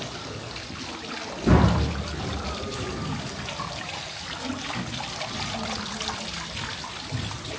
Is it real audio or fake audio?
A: real